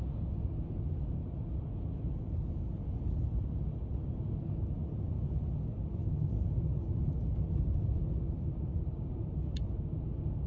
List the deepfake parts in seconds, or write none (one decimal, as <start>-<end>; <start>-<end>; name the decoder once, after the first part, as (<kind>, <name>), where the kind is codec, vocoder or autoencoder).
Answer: 1.2-2.5 (vocoder, BigVGAN v2); 3.2-4.4; 6.0-6.6